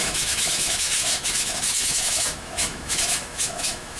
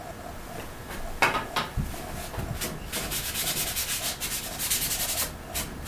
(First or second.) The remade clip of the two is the first